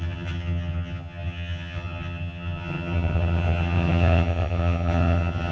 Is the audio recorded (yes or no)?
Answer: no